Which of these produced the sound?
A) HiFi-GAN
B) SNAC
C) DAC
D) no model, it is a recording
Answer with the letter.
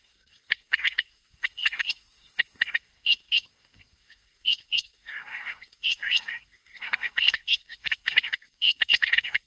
B